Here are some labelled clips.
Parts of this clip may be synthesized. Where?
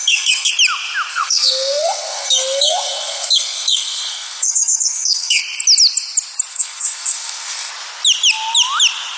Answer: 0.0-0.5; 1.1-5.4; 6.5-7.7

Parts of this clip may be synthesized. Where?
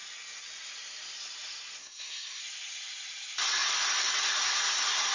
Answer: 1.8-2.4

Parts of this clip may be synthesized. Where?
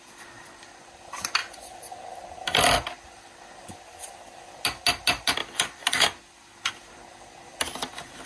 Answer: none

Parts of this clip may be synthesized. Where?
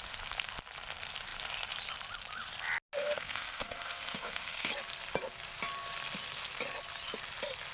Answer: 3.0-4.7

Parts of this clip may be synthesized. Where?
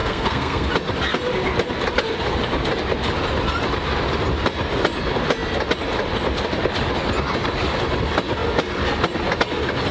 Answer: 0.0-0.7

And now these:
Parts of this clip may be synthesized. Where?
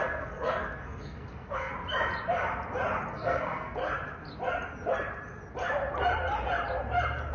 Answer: 0.0-1.7; 3.1-3.8